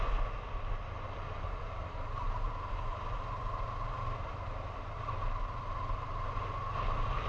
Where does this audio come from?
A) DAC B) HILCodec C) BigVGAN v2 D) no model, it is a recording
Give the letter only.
D